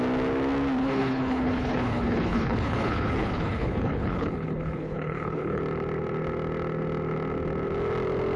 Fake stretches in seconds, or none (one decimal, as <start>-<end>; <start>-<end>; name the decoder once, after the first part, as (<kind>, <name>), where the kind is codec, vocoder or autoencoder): 0.8-5.6 (codec, HILCodec)